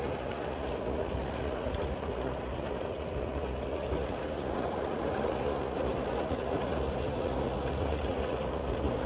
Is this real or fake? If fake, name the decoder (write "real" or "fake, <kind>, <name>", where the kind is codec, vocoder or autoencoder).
fake, vocoder, Vocos